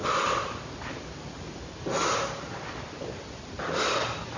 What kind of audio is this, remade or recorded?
recorded